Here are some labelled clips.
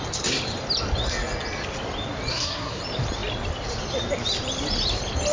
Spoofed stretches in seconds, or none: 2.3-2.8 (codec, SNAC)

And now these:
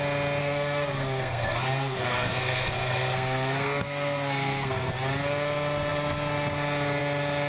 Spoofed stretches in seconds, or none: 0.4-4.9 (codec, SNAC)

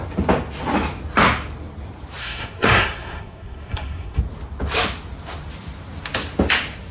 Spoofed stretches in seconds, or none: 2.2-4.2 (codec, SNAC)

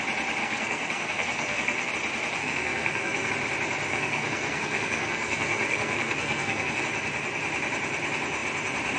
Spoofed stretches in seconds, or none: 0.4-1.9 (codec, SNAC); 2.4-3.3; 3.9-6.8

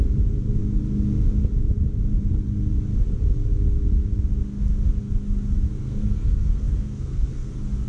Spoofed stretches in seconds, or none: 5.8-7.5 (codec, SNAC)

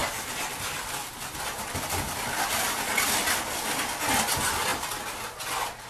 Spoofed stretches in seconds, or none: none